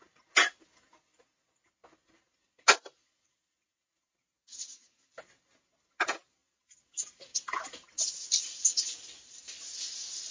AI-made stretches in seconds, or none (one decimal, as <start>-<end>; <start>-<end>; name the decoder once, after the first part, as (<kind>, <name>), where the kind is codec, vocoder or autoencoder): 4.5-5.1 (codec, DAC)